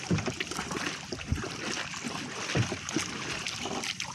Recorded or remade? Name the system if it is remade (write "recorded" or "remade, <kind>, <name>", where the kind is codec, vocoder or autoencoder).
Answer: recorded